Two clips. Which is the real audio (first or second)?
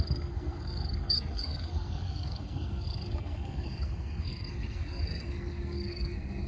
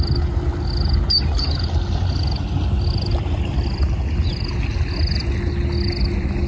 second